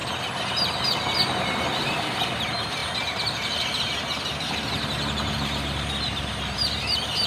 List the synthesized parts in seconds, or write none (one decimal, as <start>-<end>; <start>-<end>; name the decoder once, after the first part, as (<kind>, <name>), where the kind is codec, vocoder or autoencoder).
1.4-7.3 (vocoder, BigVGAN v2)